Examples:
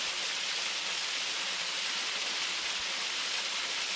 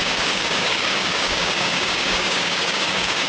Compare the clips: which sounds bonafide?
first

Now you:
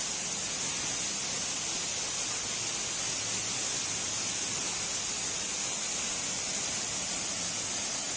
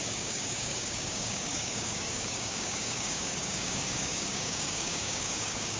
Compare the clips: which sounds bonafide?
first